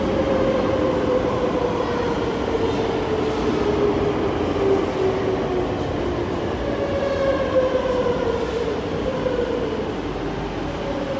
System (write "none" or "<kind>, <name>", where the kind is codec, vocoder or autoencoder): none